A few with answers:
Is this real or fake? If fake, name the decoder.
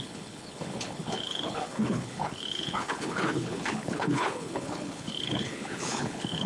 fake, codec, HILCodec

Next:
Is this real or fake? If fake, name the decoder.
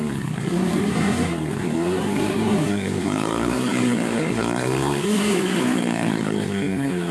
fake, codec, SNAC